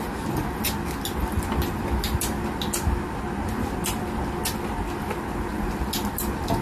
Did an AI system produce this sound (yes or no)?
no